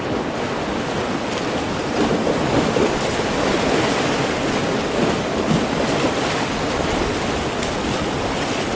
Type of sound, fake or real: real